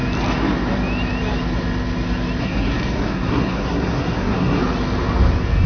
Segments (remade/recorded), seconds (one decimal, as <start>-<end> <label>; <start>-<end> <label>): 0.0-2.4 recorded; 2.4-4.6 remade; 4.6-5.7 recorded